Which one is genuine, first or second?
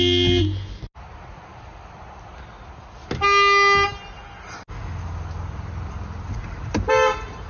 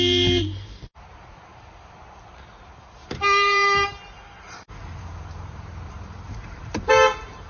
first